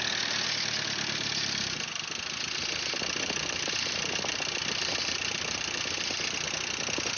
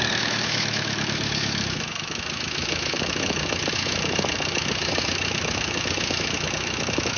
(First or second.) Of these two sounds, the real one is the first